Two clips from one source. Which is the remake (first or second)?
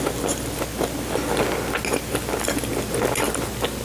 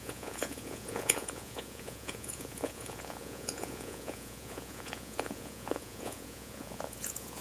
second